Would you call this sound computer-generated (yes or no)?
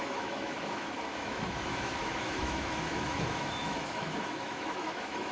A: yes